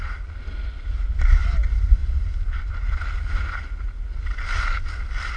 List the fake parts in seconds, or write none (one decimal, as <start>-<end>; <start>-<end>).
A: 2.0-2.7